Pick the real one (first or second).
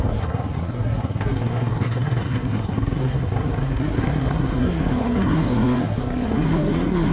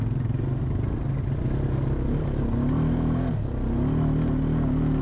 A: second